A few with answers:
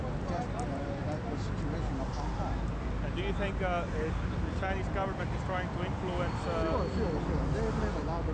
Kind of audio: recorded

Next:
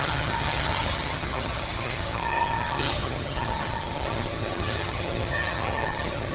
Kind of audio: remade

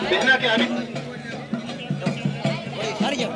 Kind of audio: recorded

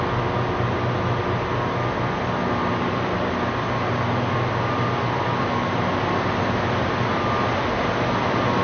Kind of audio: recorded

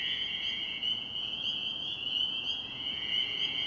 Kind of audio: remade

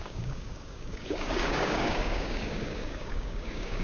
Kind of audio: remade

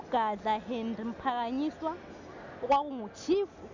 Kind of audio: recorded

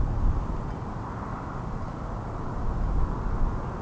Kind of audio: recorded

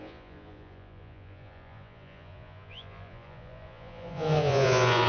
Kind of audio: remade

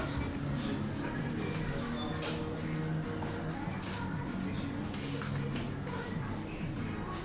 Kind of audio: recorded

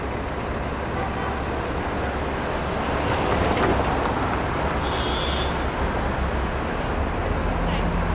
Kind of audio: recorded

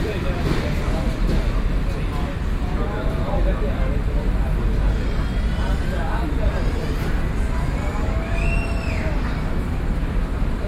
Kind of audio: recorded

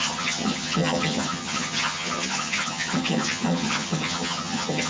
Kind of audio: remade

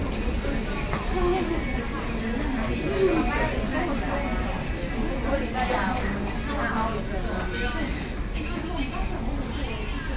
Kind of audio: recorded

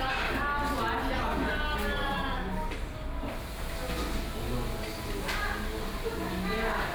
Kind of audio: recorded